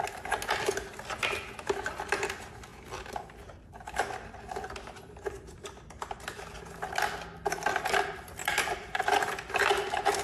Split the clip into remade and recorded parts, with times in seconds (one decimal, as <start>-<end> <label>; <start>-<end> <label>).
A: 0.0-2.7 recorded; 2.7-3.6 remade; 3.6-8.4 recorded; 8.4-9.5 remade; 9.5-10.2 recorded